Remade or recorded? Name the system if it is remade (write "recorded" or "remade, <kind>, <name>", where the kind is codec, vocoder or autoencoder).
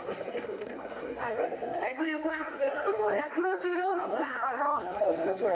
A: remade, codec, SNAC